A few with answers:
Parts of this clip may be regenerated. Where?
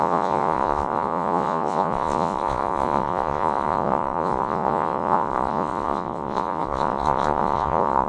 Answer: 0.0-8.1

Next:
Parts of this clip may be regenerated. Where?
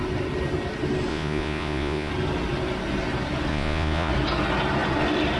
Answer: 1.1-2.1; 3.5-4.1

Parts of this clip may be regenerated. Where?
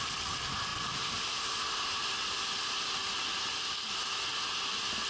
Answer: none